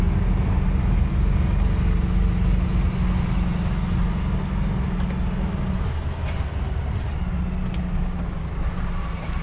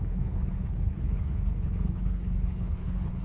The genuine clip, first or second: first